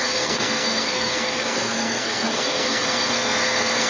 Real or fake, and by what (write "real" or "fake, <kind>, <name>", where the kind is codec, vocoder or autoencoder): fake, codec, SNAC